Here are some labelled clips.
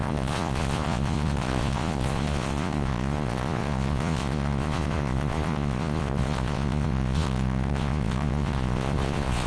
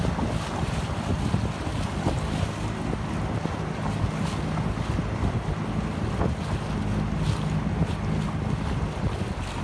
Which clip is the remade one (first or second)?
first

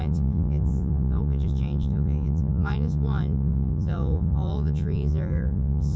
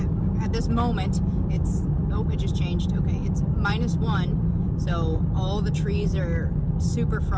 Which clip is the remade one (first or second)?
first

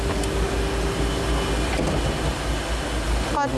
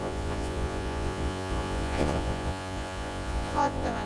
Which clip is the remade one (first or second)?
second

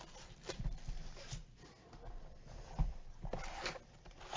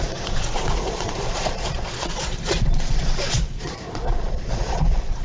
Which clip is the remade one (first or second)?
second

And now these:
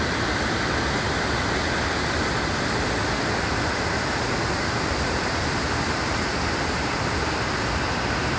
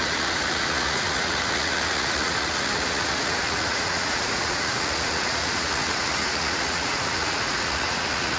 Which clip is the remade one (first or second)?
second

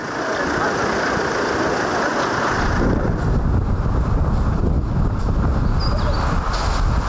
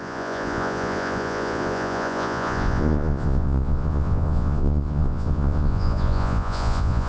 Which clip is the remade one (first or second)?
second